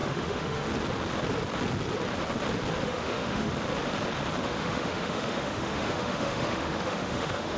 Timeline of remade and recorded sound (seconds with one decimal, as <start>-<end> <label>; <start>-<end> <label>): 0.0-0.7 remade; 0.7-2.8 recorded; 2.8-3.5 remade; 3.5-4.4 recorded; 4.4-7.6 remade